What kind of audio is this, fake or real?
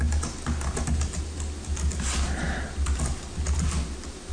real